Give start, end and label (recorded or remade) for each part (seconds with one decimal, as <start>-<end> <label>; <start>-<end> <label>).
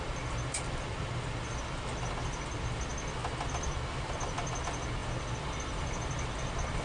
0.0-6.8 recorded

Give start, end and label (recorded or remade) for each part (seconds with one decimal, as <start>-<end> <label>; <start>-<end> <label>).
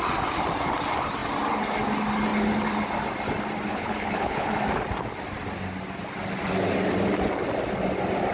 0.0-3.7 recorded; 3.7-4.5 remade; 4.5-8.3 recorded